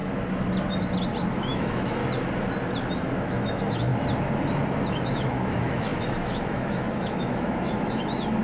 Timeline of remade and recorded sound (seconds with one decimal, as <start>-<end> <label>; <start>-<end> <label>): 0.0-1.3 recorded; 1.3-2.0 remade; 2.0-3.0 recorded; 3.0-3.9 remade; 3.9-4.9 recorded; 4.9-8.4 remade